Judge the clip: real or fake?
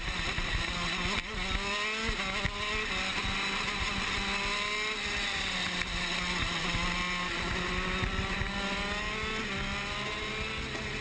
real